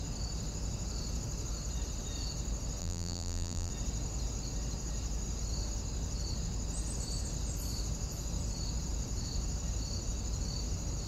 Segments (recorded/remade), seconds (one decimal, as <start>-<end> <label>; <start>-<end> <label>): 0.0-2.8 recorded; 2.8-3.7 remade; 3.7-11.1 recorded